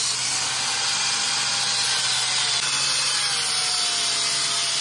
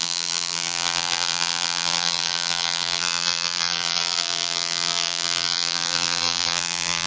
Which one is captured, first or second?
first